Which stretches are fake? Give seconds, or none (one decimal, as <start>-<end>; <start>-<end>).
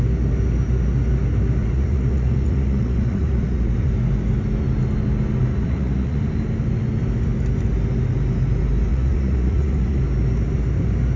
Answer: 1.6-3.9; 5.5-6.2; 8.9-10.0